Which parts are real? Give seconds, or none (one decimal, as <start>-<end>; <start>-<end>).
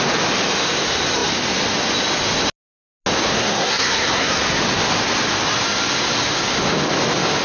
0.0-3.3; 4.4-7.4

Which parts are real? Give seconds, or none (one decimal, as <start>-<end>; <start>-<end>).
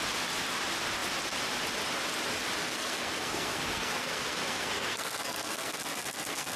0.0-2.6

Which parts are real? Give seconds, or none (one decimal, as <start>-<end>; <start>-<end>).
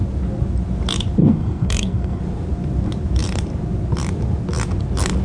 0.0-1.2; 2.2-5.2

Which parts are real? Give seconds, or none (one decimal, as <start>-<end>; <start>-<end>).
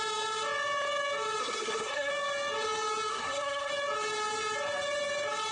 0.0-1.4; 2.1-3.1; 3.7-5.5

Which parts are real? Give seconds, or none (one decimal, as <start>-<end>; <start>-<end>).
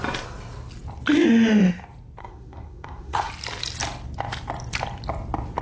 0.0-2.2; 3.3-5.6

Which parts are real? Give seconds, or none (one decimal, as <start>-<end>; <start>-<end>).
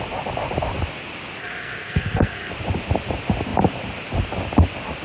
0.0-1.4; 2.5-5.0